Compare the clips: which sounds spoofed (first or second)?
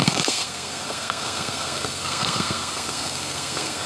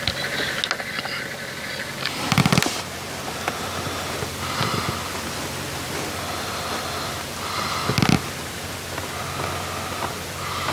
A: first